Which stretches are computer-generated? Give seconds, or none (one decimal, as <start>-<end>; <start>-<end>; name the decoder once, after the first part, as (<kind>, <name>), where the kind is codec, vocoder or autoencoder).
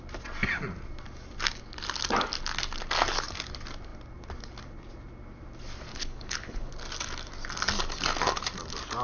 5.9-6.7 (codec, HILCodec)